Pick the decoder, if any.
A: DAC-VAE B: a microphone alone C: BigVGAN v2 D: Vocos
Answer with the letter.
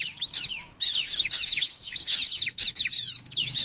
A